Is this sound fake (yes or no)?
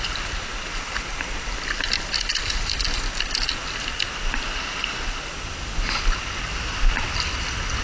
no